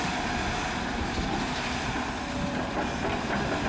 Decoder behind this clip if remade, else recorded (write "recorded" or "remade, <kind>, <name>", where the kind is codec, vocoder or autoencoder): recorded